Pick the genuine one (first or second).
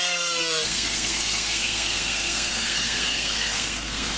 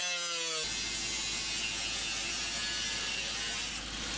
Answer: second